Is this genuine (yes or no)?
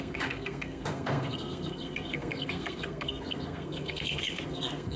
no